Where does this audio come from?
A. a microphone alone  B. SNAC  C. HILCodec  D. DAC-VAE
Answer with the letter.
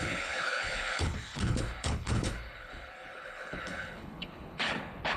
C